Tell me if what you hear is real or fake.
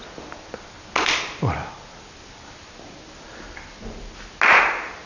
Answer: real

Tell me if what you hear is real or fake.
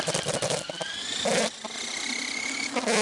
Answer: real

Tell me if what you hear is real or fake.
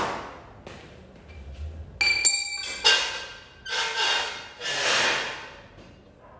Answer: real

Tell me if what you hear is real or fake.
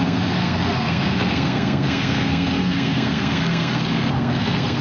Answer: fake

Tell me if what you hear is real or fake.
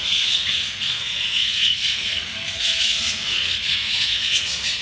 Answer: fake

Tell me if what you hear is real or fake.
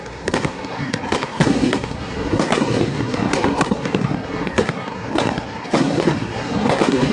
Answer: fake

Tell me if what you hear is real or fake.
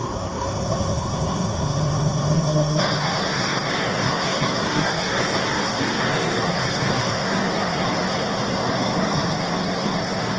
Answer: fake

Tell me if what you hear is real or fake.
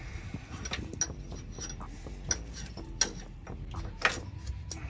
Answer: real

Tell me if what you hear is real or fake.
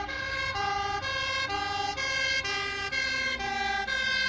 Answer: real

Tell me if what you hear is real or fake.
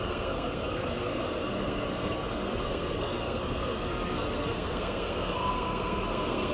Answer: fake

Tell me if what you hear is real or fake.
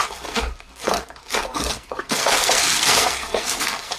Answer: fake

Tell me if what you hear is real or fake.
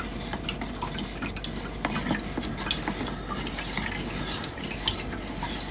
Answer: real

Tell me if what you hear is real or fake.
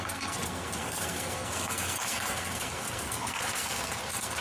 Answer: fake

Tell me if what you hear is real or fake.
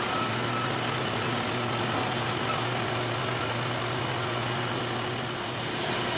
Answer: real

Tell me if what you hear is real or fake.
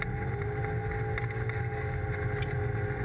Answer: real